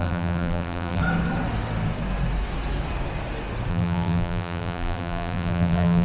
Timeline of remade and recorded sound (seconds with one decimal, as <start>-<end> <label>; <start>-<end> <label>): 0.0-1.0 remade; 1.0-3.7 recorded; 3.7-6.0 remade